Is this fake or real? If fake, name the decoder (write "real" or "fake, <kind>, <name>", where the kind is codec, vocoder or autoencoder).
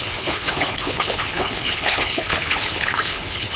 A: fake, codec, HILCodec